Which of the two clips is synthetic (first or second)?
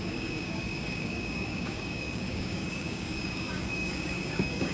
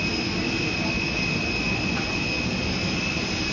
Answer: first